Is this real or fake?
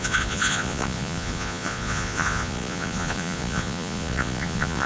fake